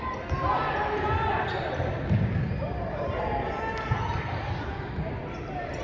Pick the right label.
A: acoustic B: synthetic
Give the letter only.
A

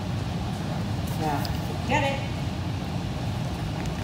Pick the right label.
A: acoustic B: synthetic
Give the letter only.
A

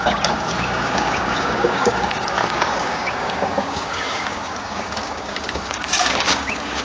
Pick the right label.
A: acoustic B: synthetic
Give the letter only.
B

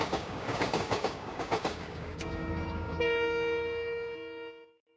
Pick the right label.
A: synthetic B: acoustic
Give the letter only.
A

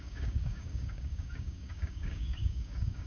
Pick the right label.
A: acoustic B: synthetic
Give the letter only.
B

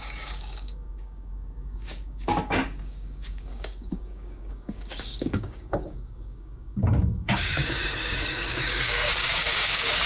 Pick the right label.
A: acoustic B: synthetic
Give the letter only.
B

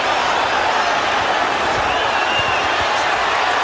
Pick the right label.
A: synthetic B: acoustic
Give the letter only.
B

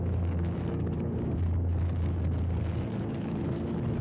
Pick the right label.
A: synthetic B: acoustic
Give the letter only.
A